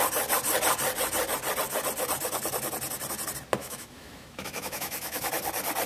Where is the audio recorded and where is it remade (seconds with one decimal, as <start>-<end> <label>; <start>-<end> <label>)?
0.0-3.6 recorded; 3.6-5.3 remade; 5.3-5.9 recorded

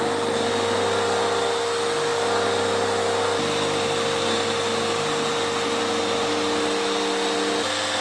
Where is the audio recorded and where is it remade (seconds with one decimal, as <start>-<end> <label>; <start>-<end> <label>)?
0.0-8.0 recorded

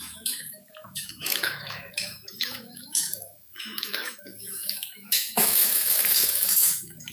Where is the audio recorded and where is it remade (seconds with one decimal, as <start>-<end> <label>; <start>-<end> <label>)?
0.0-7.1 remade

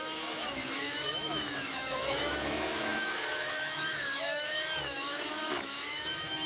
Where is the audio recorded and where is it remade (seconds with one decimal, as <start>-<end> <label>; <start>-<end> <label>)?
0.0-6.5 remade

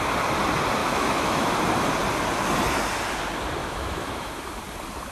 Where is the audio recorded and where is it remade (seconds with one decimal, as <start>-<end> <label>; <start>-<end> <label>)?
0.0-0.8 recorded; 0.8-1.5 remade; 1.5-3.6 recorded; 3.6-4.3 remade; 4.3-5.1 recorded

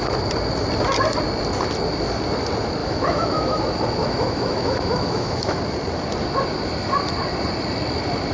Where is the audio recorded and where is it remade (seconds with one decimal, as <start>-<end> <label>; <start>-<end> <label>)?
0.0-2.8 recorded; 2.8-3.6 remade; 3.6-4.0 recorded; 4.0-5.6 remade; 5.6-8.3 recorded

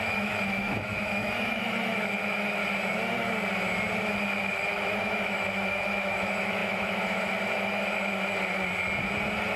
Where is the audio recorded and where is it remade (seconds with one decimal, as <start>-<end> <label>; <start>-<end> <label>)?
0.0-2.6 remade; 2.6-4.5 recorded; 4.5-7.9 remade; 7.9-9.6 recorded